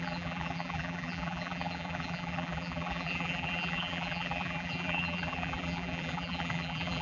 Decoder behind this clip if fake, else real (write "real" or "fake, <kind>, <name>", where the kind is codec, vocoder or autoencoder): fake, vocoder, BigVGAN v2